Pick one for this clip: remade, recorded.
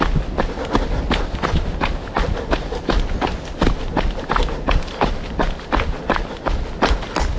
recorded